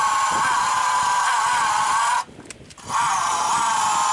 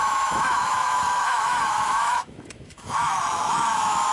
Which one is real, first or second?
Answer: first